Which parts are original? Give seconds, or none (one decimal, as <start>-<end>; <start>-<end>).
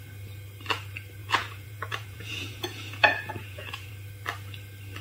0.0-1.2; 3.9-5.0